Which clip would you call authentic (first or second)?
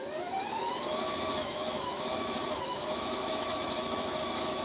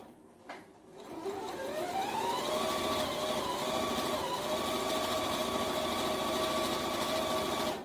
second